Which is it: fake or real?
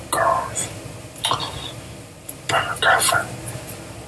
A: real